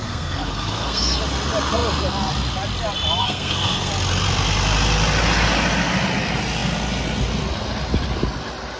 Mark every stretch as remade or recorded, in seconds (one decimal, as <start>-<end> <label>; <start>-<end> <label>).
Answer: 0.0-1.2 remade; 1.2-3.2 recorded; 3.2-3.9 remade; 3.9-8.8 recorded